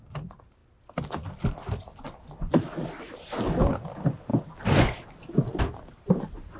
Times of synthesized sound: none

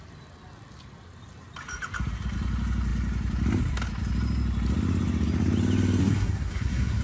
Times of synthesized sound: 6.0-7.0 (codec, SNAC)

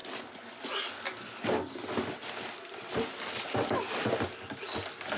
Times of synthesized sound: none

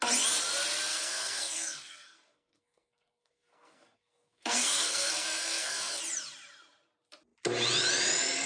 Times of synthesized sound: 0.9-6.0 (codec, SNAC)

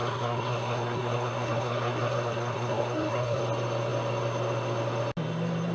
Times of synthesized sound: 0.0-3.4 (codec, SNAC)

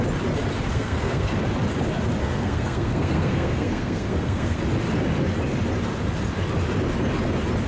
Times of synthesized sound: 0.7-1.4 (codec, SNAC); 2.2-4.6

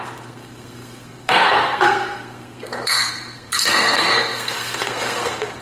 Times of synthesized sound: 0.0-5.6 (codec, SNAC)

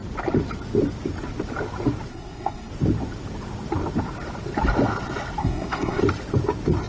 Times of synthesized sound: 2.1-2.7 (codec, SNAC); 5.4-6.0